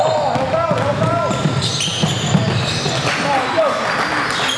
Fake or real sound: real